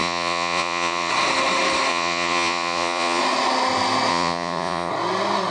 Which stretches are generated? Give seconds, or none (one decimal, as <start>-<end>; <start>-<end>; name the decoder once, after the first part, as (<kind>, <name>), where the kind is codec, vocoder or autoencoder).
0.0-1.1 (vocoder, Vocos); 1.9-3.2; 4.1-4.9